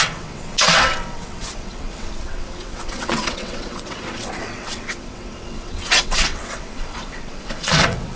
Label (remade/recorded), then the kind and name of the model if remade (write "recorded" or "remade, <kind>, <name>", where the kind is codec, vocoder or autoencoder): remade, vocoder, WaveNeXt